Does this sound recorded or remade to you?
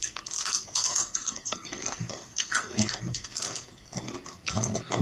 remade